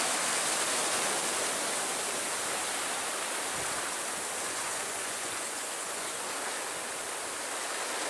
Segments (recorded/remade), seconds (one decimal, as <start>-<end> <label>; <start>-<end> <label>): 0.0-4.4 recorded; 4.4-6.3 remade; 6.3-8.1 recorded